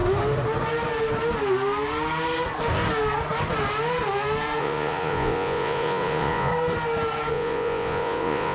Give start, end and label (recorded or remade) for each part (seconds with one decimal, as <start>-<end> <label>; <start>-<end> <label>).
0.0-4.6 recorded; 4.6-6.5 remade; 6.5-7.3 recorded; 7.3-8.5 remade